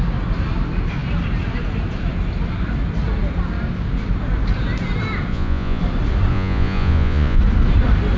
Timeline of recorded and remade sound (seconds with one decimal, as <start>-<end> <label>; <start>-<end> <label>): 0.0-5.3 recorded; 5.3-5.8 remade; 5.8-6.3 recorded; 6.3-7.4 remade; 7.4-8.2 recorded